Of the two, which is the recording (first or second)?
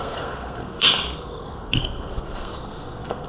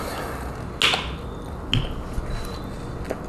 second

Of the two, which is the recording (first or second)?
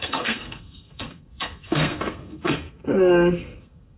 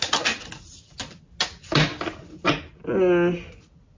second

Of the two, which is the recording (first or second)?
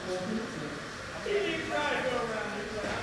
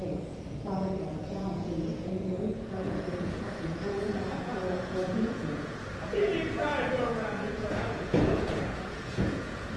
first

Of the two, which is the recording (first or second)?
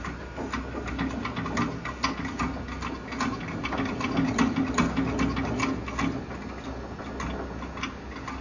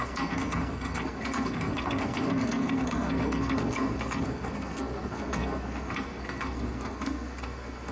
first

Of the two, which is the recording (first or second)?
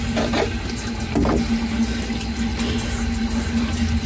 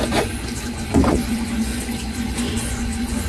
first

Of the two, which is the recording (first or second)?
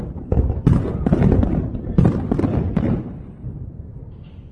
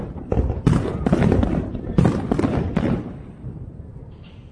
first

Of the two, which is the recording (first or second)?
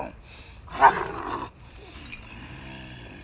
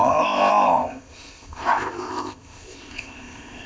first